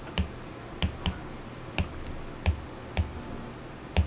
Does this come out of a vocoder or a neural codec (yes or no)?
no